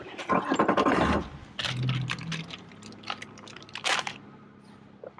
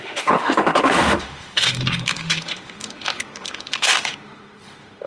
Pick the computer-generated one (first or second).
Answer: second